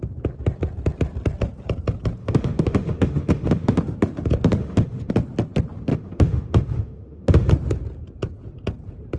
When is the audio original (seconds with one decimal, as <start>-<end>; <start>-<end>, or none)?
0.0-2.2; 3.8-4.6; 5.1-5.9; 7.5-9.2